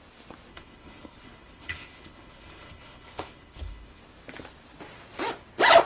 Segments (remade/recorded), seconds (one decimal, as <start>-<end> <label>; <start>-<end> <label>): 0.0-0.5 recorded; 0.5-4.0 remade; 4.0-5.9 recorded